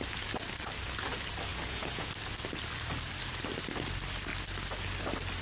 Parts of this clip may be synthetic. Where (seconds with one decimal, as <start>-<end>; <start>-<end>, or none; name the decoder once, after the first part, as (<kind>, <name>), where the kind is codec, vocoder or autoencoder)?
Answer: 1.5-2.1 (vocoder, Vocos)